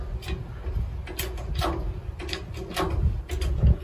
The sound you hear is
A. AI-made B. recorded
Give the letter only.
B